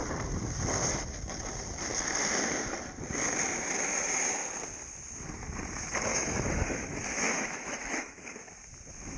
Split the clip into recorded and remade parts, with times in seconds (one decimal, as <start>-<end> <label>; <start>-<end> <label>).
0.0-6.1 recorded; 6.1-8.4 remade; 8.4-9.2 recorded